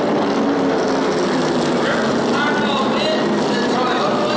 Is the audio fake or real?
real